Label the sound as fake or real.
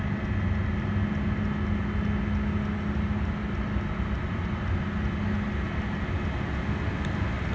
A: real